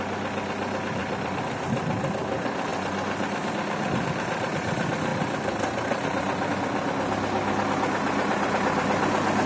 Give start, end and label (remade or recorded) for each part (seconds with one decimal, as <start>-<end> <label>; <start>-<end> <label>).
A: 0.0-1.0 recorded; 1.0-1.6 remade; 1.6-5.1 recorded; 5.1-6.5 remade; 6.5-9.5 recorded